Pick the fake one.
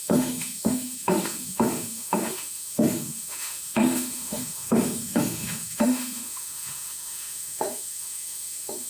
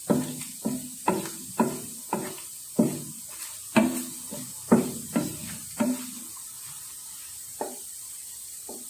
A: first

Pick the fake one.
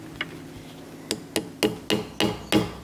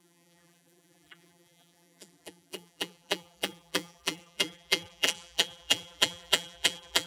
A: second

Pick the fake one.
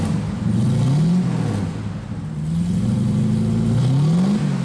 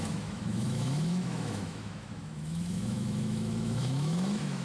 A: second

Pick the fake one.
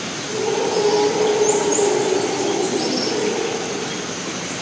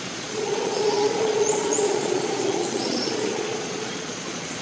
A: second